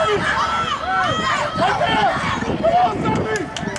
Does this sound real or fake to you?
real